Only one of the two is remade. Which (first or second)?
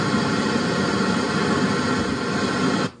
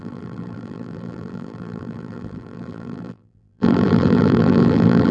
second